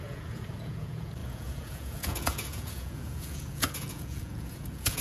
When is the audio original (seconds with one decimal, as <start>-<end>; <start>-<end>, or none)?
none